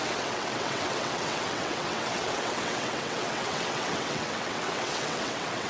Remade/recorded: remade